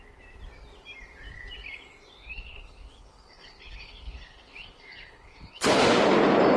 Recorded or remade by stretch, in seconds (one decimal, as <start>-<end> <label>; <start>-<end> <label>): 0.0-2.2 recorded; 2.2-5.9 remade; 5.9-6.6 recorded